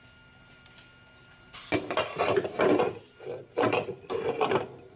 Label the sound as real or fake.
real